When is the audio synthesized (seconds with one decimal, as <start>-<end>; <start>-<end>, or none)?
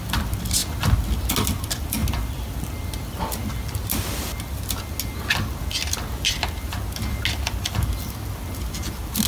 none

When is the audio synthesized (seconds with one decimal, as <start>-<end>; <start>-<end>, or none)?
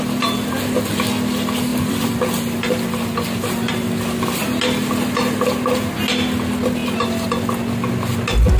none